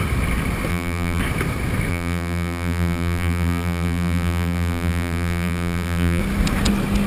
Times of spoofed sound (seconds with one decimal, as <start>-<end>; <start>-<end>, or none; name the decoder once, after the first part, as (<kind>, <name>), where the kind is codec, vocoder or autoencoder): 0.7-1.2 (vocoder, BigVGAN v2); 1.9-6.2